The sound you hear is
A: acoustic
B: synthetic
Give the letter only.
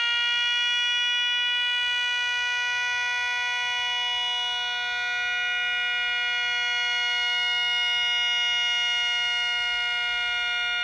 A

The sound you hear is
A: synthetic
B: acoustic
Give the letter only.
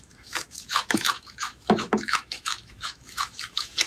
A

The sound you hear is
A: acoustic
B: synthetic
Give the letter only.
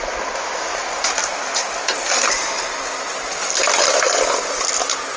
A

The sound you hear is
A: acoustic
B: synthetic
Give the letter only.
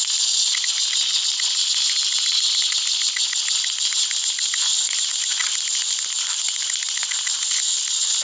A